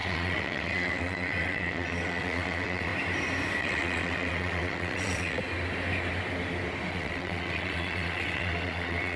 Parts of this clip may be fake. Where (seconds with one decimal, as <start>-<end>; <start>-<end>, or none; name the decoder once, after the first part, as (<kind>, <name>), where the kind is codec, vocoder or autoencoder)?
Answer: 0.0-2.9 (vocoder, WaveNeXt); 3.6-5.4; 6.9-9.2